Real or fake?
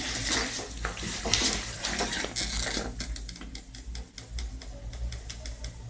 real